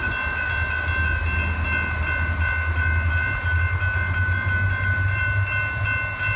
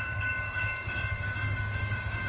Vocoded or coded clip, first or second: second